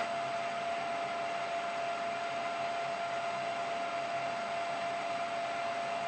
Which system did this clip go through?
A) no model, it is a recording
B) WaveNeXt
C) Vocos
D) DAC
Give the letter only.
A